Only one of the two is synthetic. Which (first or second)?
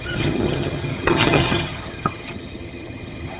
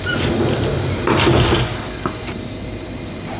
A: first